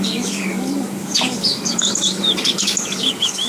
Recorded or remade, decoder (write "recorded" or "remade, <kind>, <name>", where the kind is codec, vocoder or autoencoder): remade, codec, DAC